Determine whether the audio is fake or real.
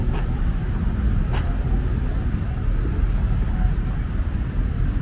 real